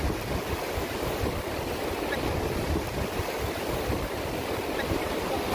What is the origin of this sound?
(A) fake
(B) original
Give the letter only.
B